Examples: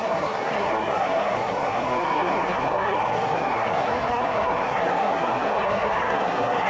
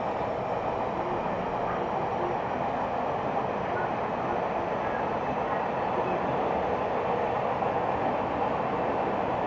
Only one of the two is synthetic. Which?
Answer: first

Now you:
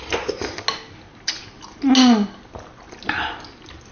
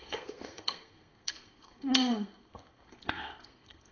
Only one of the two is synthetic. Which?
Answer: second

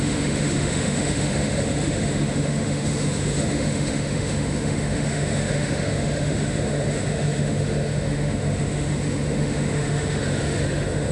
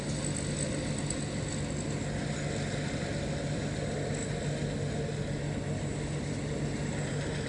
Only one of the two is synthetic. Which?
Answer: first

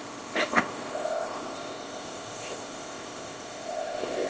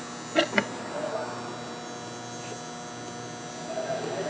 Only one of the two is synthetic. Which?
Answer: first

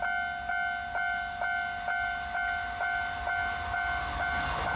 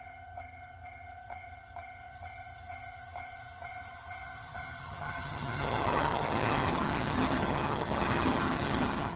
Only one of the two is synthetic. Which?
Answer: second